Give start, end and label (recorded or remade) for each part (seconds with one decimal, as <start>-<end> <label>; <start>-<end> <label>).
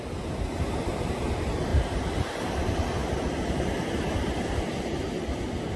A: 0.0-1.7 recorded; 1.7-2.5 remade; 2.5-5.8 recorded